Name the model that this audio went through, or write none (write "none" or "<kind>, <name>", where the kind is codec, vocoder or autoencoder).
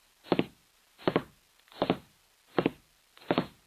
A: none